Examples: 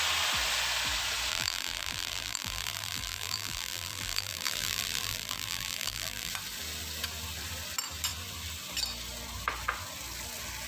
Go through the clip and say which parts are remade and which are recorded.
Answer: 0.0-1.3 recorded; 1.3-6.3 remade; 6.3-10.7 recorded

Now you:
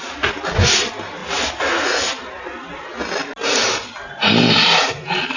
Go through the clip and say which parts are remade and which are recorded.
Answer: 0.0-5.4 recorded

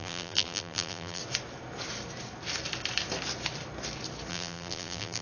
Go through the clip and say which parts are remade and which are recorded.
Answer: 0.0-1.2 remade; 1.2-4.3 recorded; 4.3-5.2 remade

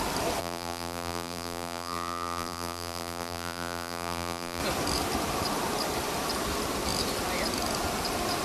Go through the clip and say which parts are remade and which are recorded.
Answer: 0.0-0.4 recorded; 0.4-4.6 remade; 4.6-8.4 recorded

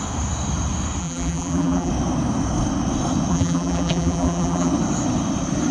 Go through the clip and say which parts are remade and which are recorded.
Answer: 0.0-1.0 recorded; 1.0-1.9 remade; 1.9-3.3 recorded; 3.3-4.7 remade; 4.7-5.7 recorded